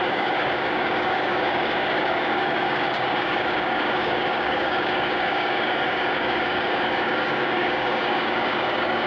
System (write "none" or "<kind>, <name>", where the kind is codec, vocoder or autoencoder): codec, DAC